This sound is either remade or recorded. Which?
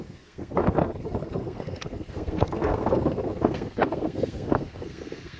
remade